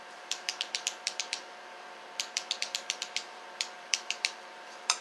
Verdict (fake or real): fake